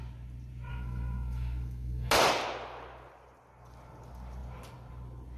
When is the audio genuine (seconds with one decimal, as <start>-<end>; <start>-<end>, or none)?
0.0-0.7; 2.1-5.4